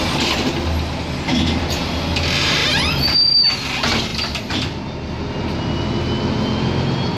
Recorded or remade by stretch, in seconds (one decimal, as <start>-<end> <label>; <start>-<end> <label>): 0.0-2.6 recorded; 2.6-3.5 remade; 3.5-7.2 recorded

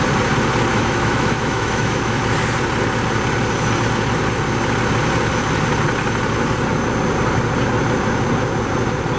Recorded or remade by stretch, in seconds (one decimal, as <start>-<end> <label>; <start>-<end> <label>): 0.0-0.7 recorded; 0.7-2.2 remade; 2.2-9.2 recorded

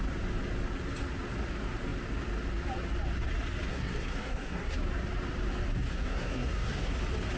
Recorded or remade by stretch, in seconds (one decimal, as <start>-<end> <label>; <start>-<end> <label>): 0.0-3.7 recorded; 3.7-4.8 remade; 4.8-5.9 recorded; 5.9-6.9 remade; 6.9-7.4 recorded

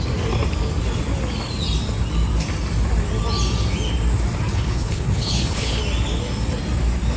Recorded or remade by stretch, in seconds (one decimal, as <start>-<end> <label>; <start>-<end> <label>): 0.0-4.5 recorded; 4.5-5.8 remade; 5.8-7.2 recorded

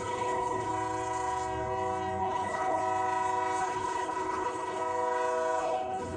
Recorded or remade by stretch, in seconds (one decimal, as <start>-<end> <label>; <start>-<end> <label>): 0.0-0.7 remade; 0.7-2.2 recorded; 2.2-2.8 remade; 2.8-3.6 recorded; 3.6-4.8 remade; 4.8-5.6 recorded; 5.6-6.2 remade

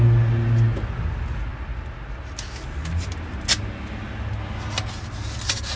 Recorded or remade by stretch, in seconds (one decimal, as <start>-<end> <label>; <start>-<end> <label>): 0.0-5.8 recorded

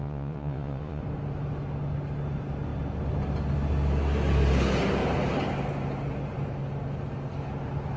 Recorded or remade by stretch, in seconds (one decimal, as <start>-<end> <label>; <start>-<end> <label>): 0.0-1.0 remade; 1.0-8.0 recorded

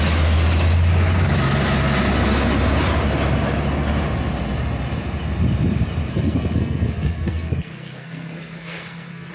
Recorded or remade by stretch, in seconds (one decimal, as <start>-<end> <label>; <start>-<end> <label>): 0.0-6.1 recorded; 6.1-9.3 remade